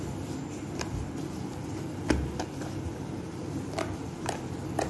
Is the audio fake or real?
real